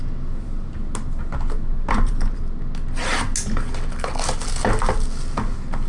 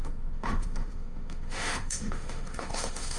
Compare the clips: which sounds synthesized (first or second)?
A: second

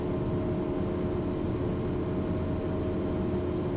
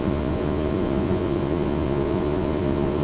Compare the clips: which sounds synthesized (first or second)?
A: second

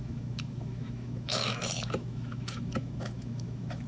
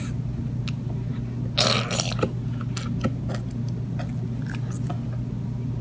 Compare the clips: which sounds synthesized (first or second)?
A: first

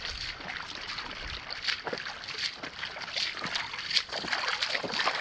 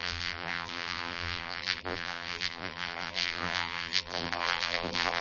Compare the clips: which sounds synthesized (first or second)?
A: second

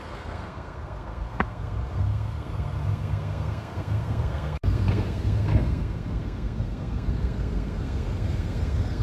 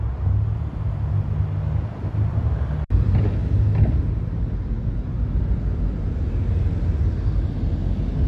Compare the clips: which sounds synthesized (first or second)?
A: first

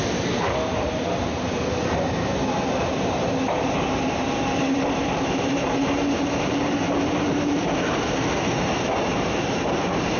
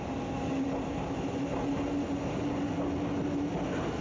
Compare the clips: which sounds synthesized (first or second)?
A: first